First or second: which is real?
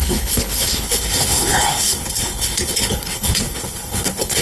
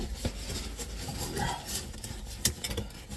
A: second